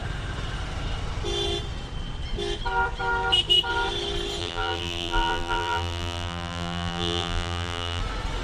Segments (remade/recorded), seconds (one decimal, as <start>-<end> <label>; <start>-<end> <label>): 0.0-4.4 recorded; 4.4-8.0 remade; 8.0-8.4 recorded